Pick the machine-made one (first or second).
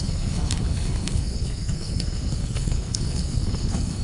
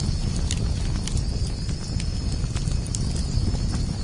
first